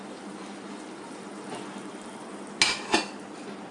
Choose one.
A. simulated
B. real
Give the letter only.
B